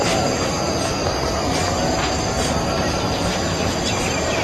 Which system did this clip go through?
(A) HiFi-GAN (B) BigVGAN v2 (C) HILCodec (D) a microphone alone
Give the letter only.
B